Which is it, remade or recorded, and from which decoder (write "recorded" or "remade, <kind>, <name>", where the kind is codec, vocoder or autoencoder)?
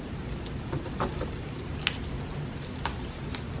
recorded